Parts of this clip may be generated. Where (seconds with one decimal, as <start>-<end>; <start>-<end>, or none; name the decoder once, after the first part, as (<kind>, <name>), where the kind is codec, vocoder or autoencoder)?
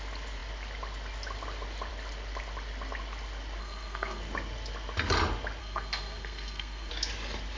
3.6-4.2 (codec, SNAC); 5.6-6.9